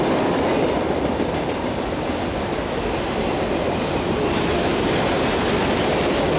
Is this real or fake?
real